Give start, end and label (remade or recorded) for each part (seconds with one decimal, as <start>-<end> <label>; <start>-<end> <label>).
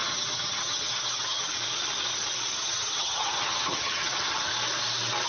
0.0-1.5 remade; 1.5-2.5 recorded; 2.5-4.5 remade; 4.5-5.3 recorded